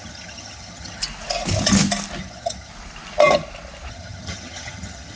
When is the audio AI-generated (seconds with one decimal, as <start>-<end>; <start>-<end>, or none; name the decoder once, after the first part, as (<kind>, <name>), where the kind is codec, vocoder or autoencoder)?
0.0-1.0 (vocoder, HiFi-GAN); 2.2-2.7; 3.9-5.2